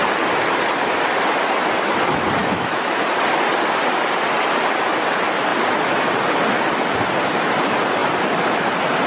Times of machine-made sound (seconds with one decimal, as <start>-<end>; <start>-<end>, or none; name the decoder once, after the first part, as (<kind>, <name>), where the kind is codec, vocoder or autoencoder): 2.4-3.0 (autoencoder, DAC-VAE)